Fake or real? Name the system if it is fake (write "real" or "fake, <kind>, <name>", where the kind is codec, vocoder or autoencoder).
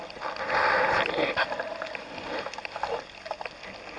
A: real